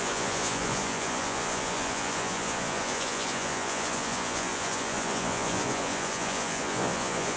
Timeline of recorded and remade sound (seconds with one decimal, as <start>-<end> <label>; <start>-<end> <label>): 0.0-7.4 remade